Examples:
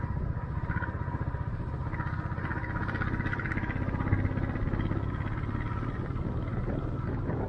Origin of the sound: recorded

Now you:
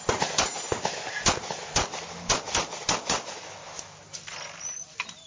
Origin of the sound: recorded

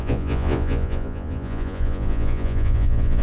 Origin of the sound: remade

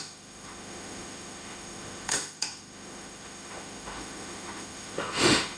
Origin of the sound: remade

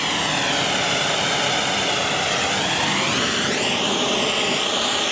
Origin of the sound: recorded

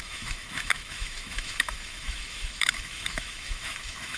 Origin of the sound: remade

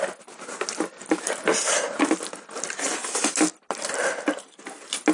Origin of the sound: recorded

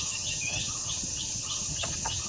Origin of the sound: remade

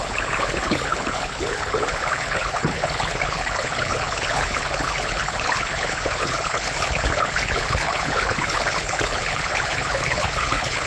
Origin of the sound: remade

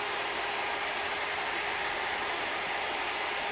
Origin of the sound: recorded